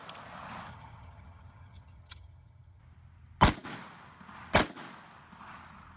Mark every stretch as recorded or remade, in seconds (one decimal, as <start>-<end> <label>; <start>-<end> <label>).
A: 0.0-0.7 recorded; 0.7-2.8 remade; 2.8-6.0 recorded